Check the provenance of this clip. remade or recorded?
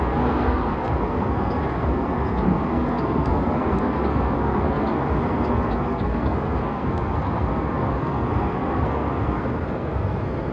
remade